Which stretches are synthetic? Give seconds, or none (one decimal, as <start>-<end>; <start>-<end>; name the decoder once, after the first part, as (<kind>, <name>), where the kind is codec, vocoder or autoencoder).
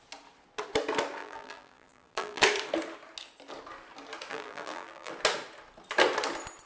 1.2-2.4 (vocoder, BigVGAN v2); 4.3-5.1